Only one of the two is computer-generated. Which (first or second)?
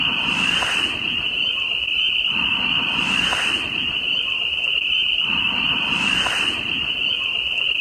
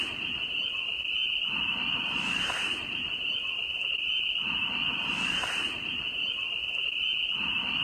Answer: first